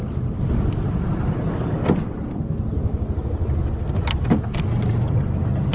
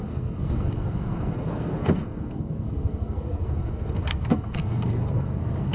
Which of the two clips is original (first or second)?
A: first